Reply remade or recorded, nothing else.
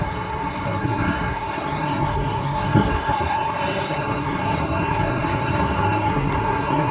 remade